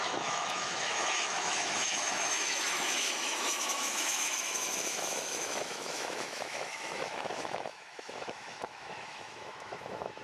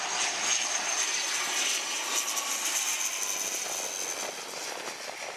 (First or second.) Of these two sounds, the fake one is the first